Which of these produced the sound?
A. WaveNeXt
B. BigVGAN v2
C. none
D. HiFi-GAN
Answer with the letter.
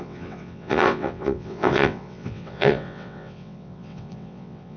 A